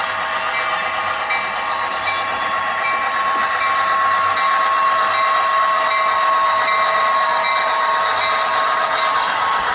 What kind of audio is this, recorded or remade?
recorded